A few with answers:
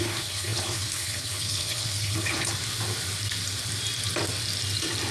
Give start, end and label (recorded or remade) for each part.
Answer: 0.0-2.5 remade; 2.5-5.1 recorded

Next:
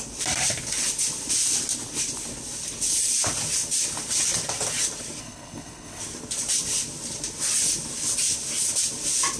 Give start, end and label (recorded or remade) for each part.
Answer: 0.0-5.2 recorded; 5.2-6.0 remade; 6.0-9.4 recorded